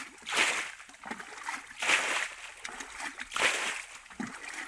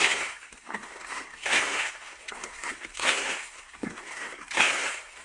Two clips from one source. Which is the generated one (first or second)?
second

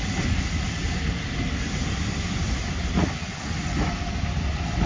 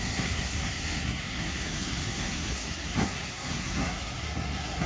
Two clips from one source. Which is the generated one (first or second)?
second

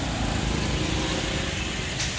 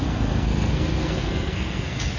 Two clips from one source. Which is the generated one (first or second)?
second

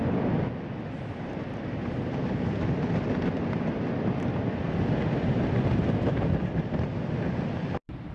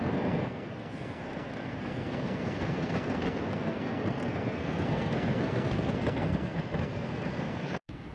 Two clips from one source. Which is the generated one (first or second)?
second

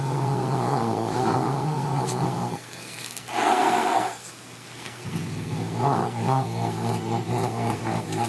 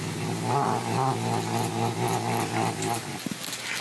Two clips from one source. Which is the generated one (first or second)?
first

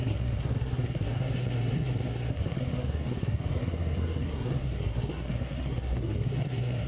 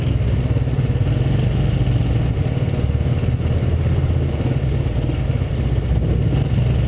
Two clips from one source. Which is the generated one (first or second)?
first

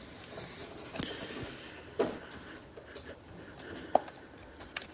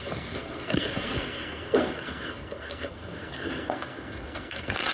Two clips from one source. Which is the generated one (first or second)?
second